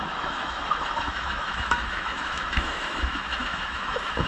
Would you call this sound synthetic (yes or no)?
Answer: yes